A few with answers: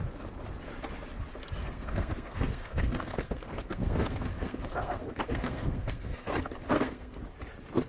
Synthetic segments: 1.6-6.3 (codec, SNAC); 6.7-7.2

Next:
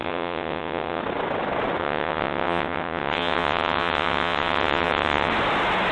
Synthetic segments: 0.0-1.0 (vocoder, WaveNeXt); 1.8-5.3

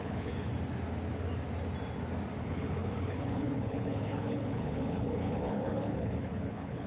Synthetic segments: 0.0-0.5 (codec, HILCodec); 2.4-6.9

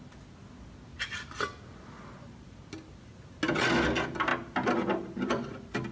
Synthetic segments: none

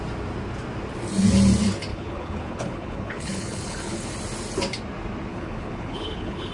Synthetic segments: 1.9-4.1 (codec, HILCodec); 5.3-6.5

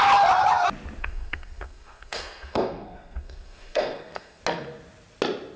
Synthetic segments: 1.0-4.4 (codec, SNAC)